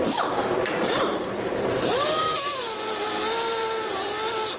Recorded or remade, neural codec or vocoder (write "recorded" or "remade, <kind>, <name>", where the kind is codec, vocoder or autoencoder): remade, vocoder, BigVGAN v2